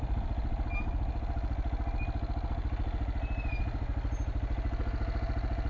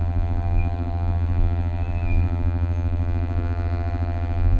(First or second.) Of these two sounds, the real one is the first